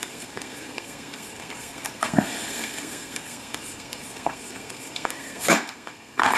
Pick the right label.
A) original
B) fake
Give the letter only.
B